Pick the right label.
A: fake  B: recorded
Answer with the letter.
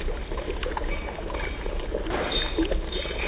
B